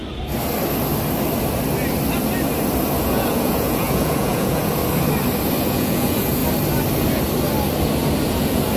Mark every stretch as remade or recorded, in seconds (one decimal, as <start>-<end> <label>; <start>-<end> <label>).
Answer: 0.0-3.0 recorded; 3.0-4.8 remade; 4.8-5.6 recorded; 5.6-6.4 remade; 6.4-8.3 recorded; 8.3-8.8 remade